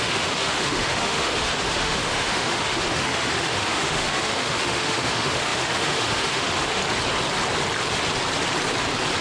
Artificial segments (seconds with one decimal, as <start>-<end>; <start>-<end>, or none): 0.0-6.8